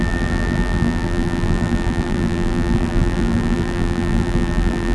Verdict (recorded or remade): remade